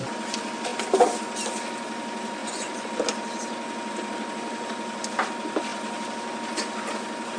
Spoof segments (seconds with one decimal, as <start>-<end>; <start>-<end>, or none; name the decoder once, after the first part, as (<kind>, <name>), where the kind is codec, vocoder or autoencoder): 2.4-2.9 (vocoder, Vocos)